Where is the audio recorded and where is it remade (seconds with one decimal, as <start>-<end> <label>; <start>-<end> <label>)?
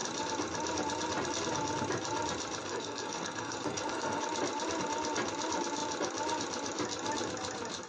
0.0-2.6 recorded; 2.6-4.2 remade; 4.2-7.9 recorded